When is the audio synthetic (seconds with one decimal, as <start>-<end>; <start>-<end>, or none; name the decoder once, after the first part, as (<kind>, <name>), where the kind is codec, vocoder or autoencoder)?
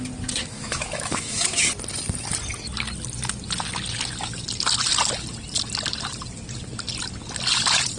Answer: 0.4-1.6 (autoencoder, DAC-VAE)